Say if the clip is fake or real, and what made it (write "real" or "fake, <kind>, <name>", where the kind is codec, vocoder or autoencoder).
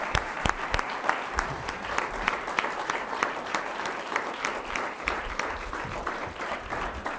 fake, vocoder, BigVGAN v2